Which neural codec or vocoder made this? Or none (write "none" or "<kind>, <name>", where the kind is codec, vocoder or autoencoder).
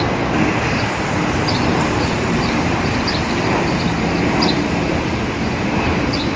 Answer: vocoder, BigVGAN v2